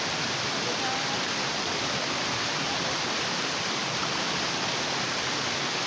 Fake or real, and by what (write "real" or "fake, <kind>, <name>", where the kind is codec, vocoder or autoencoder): real